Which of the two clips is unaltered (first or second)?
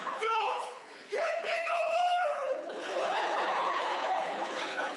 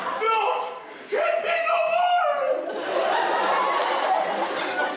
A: second